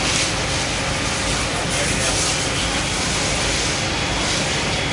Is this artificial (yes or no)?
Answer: no